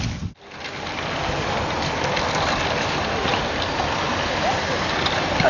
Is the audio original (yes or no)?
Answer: yes